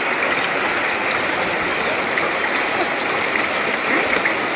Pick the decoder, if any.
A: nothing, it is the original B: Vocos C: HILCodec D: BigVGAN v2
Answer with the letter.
A